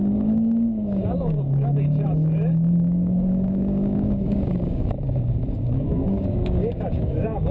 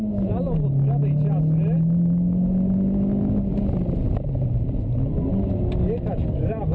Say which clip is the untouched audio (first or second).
second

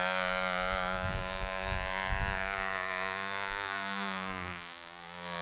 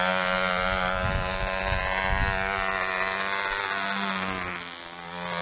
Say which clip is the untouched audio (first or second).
second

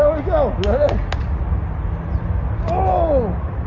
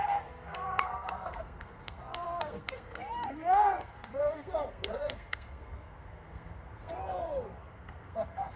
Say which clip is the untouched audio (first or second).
first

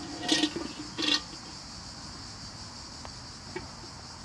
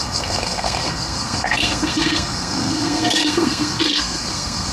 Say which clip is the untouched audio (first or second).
first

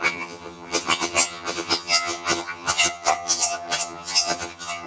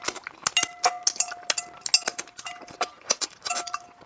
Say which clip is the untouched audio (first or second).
second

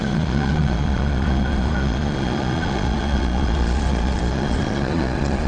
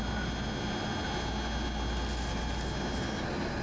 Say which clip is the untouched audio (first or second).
second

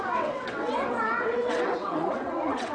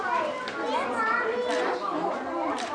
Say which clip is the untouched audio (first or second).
second